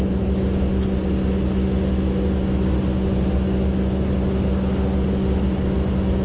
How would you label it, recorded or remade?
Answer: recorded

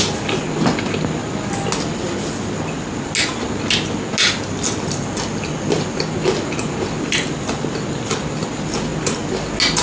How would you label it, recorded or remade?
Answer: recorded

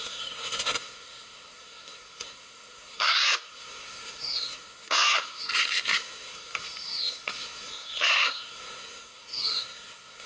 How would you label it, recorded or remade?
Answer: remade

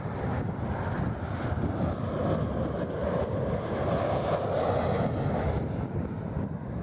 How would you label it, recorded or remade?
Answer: recorded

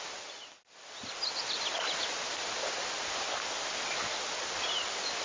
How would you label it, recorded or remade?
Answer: remade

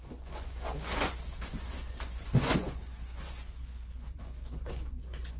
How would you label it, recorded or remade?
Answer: remade